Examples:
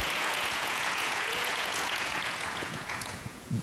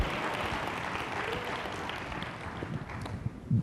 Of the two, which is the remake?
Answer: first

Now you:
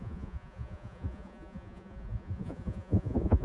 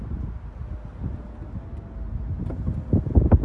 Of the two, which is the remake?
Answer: first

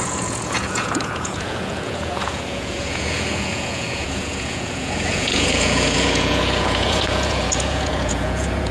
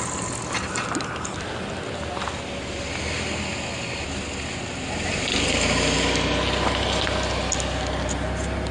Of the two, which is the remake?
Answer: first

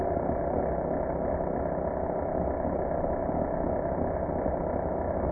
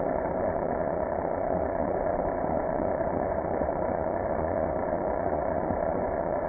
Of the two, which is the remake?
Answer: second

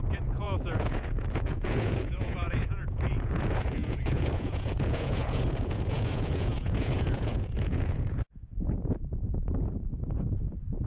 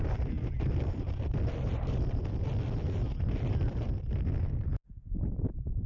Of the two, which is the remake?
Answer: first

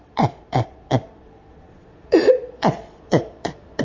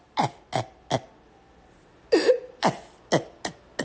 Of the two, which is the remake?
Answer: first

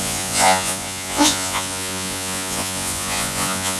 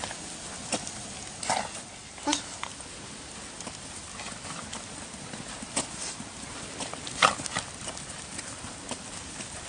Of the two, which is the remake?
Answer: first